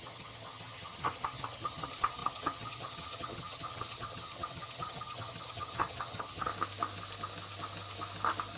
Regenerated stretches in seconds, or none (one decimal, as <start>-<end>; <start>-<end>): 0.0-6.5